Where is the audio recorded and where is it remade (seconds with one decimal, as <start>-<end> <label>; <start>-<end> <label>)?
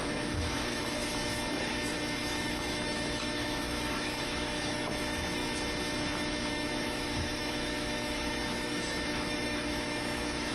0.0-1.1 remade; 1.1-1.7 recorded; 1.7-5.4 remade; 5.4-6.5 recorded; 6.5-10.5 remade